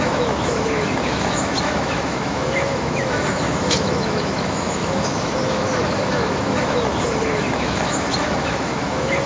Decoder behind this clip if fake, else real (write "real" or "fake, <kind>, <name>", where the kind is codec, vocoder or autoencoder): fake, autoencoder, DAC-VAE